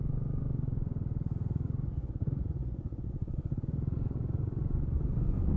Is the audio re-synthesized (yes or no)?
yes